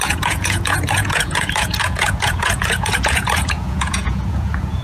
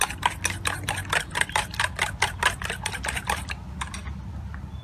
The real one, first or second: second